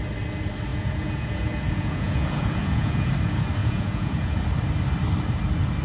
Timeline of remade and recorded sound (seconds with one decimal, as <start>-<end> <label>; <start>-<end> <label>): 0.0-0.7 recorded; 0.7-3.1 remade; 3.1-3.6 recorded; 3.6-4.4 remade; 4.4-5.8 recorded